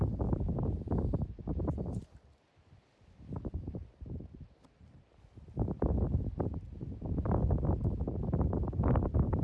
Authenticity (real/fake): real